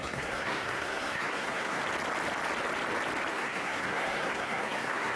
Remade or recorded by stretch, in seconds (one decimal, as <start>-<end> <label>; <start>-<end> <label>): 0.0-1.8 remade; 1.8-3.3 recorded; 3.3-5.2 remade